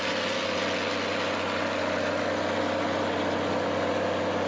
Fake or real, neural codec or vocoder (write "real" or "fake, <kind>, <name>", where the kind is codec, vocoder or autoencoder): real